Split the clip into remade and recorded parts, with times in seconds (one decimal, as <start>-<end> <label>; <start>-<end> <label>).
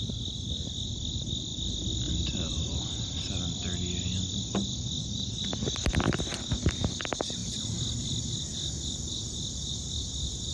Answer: 0.0-1.5 recorded; 1.5-2.1 remade; 2.1-4.7 recorded; 4.7-5.2 remade; 5.2-7.4 recorded; 7.4-8.2 remade; 8.2-10.5 recorded